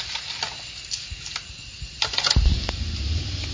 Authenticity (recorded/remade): recorded